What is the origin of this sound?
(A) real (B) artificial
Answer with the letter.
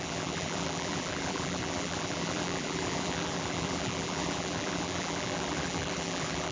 B